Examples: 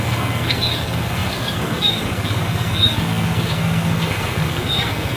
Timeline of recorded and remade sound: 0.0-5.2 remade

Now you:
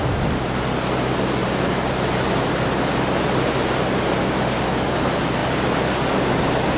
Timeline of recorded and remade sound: 0.0-1.4 recorded; 1.4-2.5 remade; 2.5-6.8 recorded

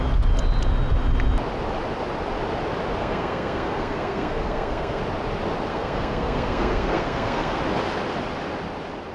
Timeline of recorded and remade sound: 0.0-3.0 recorded; 3.0-5.0 remade; 5.0-5.7 recorded; 5.7-7.6 remade; 7.6-9.1 recorded

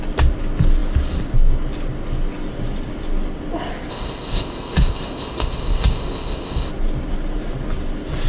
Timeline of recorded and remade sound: 0.0-3.9 recorded; 3.9-6.7 remade; 6.7-8.3 recorded

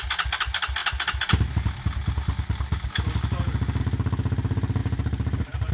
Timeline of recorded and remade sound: 0.0-4.8 recorded; 4.8-5.7 remade

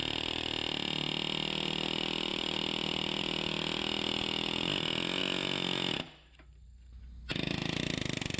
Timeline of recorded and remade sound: 0.0-8.4 recorded